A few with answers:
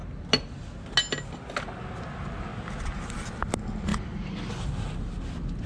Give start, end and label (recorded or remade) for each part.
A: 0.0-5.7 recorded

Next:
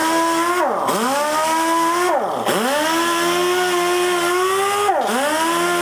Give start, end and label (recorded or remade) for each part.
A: 0.0-5.8 recorded

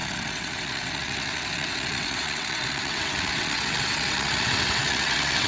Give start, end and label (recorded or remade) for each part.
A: 0.0-5.5 remade

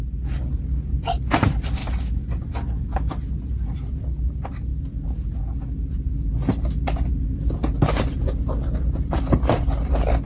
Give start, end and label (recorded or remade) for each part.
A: 0.0-10.3 recorded

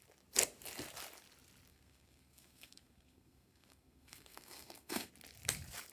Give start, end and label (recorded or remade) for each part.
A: 0.0-1.7 recorded; 1.7-5.1 remade; 5.1-5.9 recorded